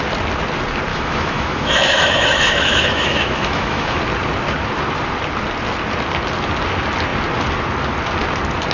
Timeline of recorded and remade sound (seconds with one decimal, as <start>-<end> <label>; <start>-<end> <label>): 0.0-0.9 recorded; 0.9-4.0 remade; 4.0-8.7 recorded